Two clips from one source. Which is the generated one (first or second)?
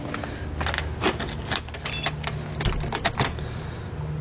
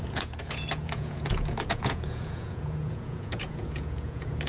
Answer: second